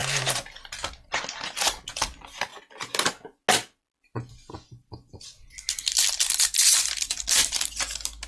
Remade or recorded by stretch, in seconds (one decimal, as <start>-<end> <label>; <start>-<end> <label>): 0.0-8.3 recorded